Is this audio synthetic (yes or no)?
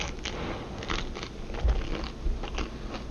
no